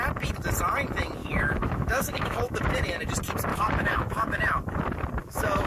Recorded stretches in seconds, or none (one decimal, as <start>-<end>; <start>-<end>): 0.0-1.2; 2.6-3.5; 4.7-5.2